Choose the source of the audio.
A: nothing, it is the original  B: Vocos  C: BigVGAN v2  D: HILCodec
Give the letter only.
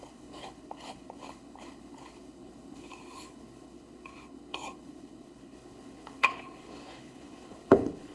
D